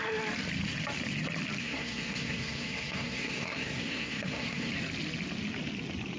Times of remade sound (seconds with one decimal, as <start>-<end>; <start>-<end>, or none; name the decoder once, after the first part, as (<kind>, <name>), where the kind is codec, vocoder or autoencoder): 1.6-4.7 (codec, SNAC)